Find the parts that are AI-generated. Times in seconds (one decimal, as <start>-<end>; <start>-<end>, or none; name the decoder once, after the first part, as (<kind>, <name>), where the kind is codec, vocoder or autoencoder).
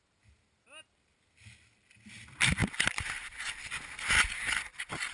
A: none